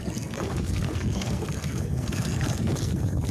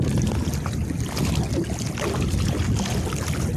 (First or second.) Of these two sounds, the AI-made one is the first